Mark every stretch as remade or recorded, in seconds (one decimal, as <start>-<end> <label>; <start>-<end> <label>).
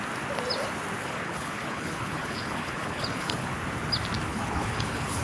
0.0-1.0 recorded; 1.0-3.5 remade; 3.5-4.3 recorded; 4.3-5.2 remade